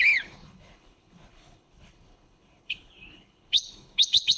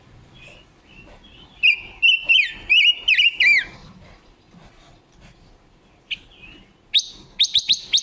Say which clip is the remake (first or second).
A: first